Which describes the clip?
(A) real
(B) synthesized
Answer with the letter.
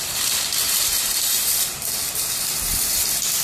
B